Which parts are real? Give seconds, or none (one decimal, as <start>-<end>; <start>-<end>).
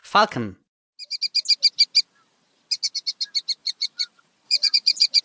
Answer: 0.0-3.6